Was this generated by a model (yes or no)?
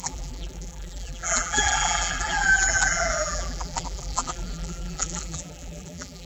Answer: yes